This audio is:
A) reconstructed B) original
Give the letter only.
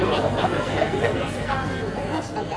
A